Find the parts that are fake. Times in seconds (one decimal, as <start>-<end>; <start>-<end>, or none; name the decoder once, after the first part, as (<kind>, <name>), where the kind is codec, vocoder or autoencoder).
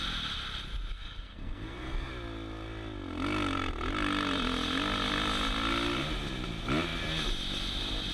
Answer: 0.9-2.1 (codec, SNAC)